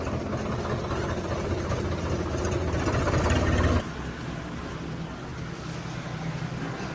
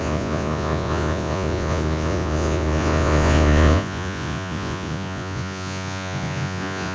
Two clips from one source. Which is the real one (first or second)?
first